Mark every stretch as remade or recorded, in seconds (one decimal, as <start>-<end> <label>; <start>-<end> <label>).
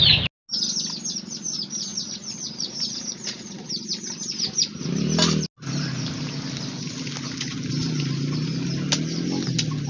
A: 0.0-1.9 recorded; 1.9-3.7 remade; 3.7-9.9 recorded